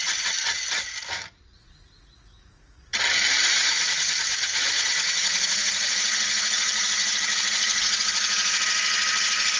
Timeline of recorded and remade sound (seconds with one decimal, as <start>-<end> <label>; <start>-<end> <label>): 0.0-1.5 recorded; 1.5-3.0 remade; 3.0-3.6 recorded; 3.6-8.6 remade; 8.6-9.6 recorded